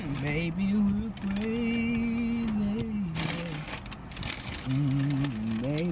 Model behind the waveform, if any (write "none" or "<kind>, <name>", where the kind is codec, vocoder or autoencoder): none